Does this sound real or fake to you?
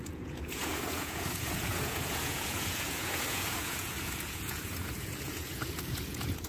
fake